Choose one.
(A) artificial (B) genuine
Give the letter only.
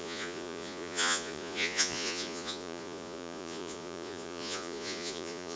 A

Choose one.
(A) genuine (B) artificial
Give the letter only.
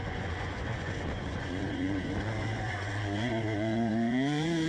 B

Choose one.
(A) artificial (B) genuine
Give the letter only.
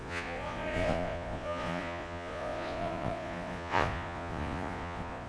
A